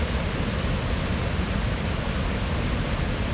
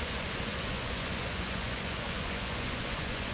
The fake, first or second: second